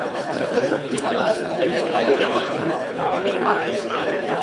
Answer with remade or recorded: remade